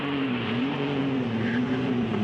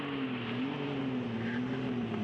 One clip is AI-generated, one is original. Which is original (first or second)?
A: second